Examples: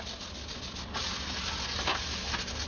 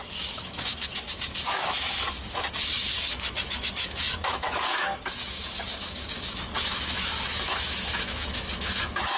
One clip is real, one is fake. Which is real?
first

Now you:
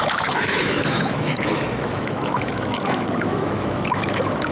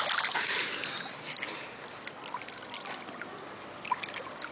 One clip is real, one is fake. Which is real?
second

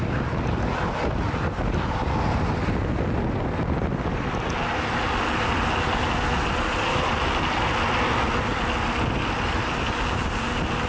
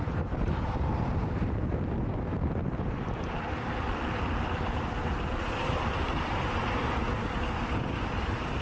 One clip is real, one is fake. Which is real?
first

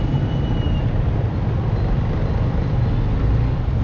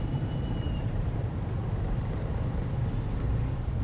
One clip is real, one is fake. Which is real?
first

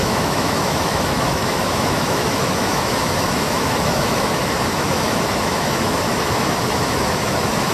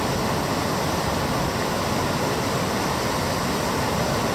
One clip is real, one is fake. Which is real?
second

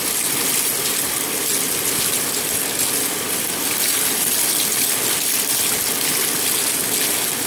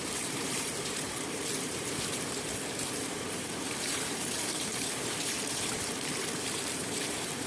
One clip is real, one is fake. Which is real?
first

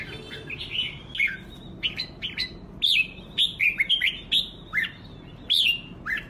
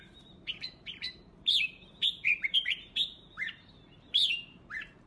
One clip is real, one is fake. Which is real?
first